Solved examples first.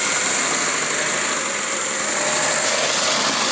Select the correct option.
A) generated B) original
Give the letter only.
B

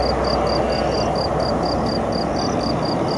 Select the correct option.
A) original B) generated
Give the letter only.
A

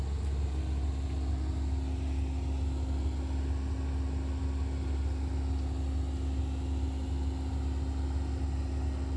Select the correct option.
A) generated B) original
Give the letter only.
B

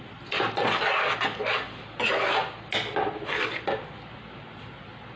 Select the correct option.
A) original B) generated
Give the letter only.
A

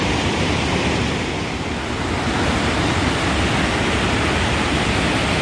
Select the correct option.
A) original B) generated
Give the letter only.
A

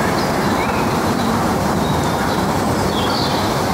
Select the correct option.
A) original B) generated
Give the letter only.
B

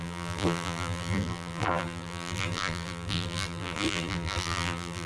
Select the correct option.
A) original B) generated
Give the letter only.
B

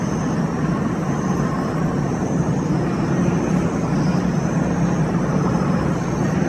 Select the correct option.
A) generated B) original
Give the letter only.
B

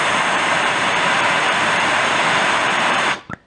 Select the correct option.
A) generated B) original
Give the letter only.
A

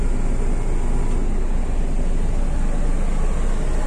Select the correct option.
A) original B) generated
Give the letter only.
A